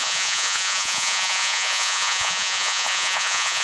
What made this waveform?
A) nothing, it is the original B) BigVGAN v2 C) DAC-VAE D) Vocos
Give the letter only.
D